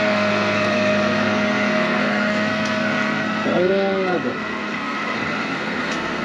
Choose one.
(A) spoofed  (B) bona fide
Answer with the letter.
A